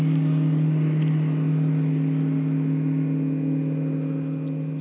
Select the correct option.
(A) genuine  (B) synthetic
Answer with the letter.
A